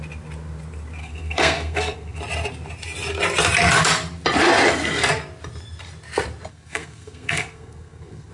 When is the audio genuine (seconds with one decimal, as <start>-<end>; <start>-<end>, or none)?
0.0-1.0; 2.2-6.5